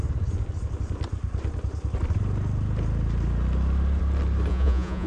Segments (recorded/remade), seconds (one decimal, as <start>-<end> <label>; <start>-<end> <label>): 0.0-4.5 recorded; 4.5-5.1 remade